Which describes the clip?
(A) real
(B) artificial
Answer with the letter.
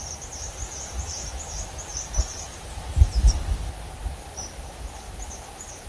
B